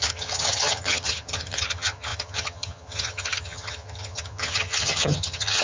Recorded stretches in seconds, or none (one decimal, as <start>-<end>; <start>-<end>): none